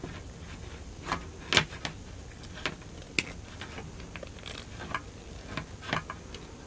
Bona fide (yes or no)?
yes